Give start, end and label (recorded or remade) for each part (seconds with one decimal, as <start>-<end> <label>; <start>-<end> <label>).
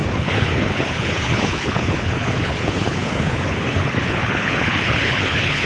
0.0-5.7 remade